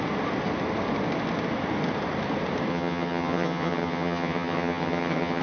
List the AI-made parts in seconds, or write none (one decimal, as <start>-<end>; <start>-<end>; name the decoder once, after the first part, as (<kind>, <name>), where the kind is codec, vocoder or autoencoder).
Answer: 2.7-5.4 (vocoder, HiFi-GAN)